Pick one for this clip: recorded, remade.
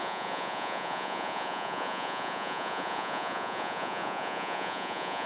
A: remade